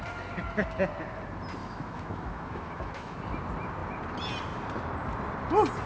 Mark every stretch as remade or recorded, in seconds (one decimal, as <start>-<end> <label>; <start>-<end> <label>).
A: 0.0-1.6 recorded; 1.6-3.2 remade; 3.2-5.9 recorded